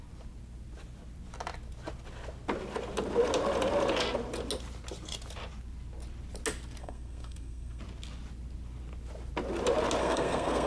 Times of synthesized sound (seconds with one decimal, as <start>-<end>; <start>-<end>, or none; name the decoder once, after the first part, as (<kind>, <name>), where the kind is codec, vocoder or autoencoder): 6.8-7.8 (codec, SNAC); 10.0-10.7